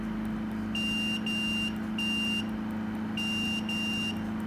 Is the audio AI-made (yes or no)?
no